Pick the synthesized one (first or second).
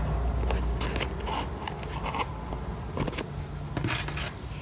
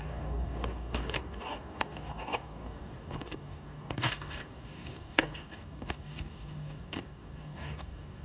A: second